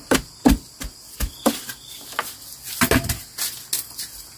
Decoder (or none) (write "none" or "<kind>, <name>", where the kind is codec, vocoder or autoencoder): none